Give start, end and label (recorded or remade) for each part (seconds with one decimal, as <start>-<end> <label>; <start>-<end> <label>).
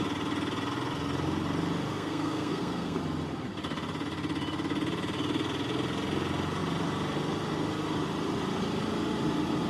0.0-1.9 recorded; 1.9-3.0 remade; 3.0-9.7 recorded